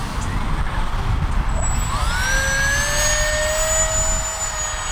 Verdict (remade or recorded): recorded